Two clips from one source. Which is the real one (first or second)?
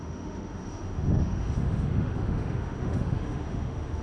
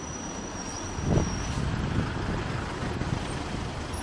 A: second